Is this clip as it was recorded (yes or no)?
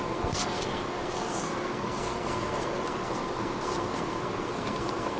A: no